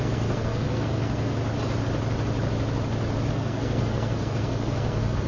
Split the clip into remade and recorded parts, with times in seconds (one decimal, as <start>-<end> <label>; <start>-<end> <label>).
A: 0.0-1.4 remade; 1.4-3.3 recorded; 3.3-5.3 remade